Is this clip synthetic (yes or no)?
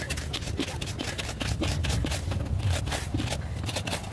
no